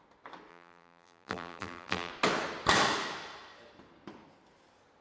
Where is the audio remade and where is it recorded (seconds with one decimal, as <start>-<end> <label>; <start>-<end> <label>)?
0.0-0.5 recorded; 0.5-2.1 remade; 2.1-5.0 recorded